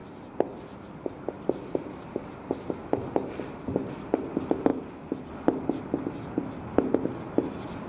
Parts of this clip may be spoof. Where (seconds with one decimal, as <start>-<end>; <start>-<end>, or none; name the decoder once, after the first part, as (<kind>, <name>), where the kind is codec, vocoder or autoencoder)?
none